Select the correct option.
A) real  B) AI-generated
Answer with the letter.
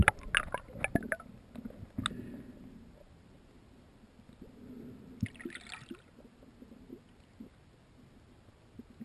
A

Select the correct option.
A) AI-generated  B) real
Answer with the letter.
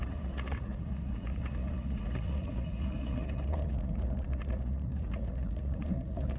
A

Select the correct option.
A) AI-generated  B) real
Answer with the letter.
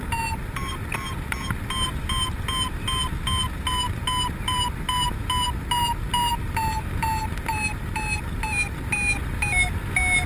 B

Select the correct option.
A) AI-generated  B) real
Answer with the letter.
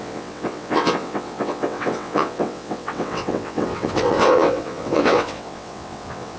A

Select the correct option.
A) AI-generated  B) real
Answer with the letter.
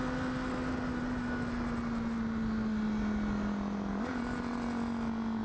B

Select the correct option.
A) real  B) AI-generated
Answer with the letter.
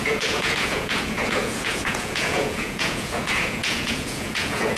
B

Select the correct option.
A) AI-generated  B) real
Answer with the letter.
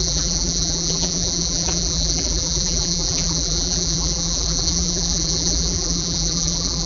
A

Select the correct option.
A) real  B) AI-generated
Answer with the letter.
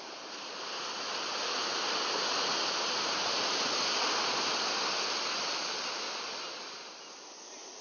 A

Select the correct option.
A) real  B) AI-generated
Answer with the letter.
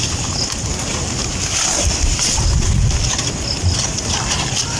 A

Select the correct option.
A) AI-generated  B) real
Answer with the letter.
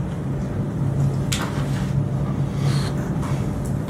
B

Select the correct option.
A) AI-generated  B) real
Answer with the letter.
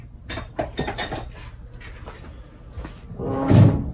B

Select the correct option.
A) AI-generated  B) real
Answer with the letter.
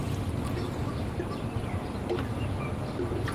B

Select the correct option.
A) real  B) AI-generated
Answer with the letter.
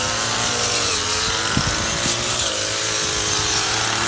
A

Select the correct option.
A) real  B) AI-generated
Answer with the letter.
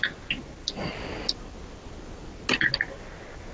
A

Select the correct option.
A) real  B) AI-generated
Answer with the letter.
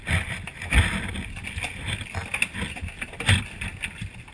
A